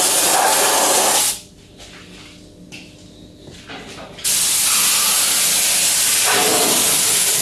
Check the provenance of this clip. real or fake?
real